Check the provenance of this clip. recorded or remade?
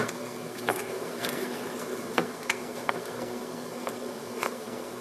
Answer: remade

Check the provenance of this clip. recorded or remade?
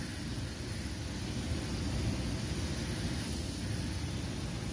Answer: recorded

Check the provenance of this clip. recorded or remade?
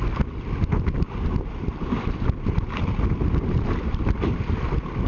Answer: recorded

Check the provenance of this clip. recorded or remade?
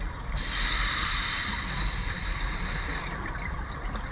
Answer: remade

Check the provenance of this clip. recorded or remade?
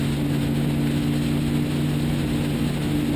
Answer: recorded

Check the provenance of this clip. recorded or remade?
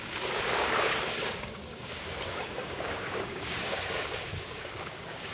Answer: remade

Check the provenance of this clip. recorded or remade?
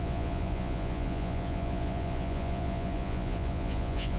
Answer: remade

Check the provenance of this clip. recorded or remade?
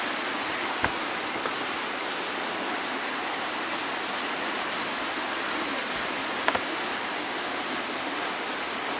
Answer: recorded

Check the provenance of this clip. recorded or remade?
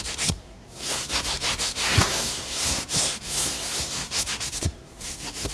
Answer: remade